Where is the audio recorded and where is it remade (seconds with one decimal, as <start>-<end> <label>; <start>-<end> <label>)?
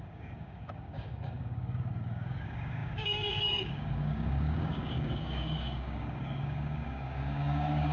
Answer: 0.0-7.9 remade